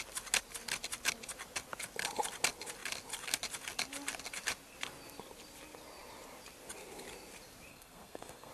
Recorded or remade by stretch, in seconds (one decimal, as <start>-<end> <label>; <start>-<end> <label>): 0.0-7.7 recorded; 7.7-8.5 remade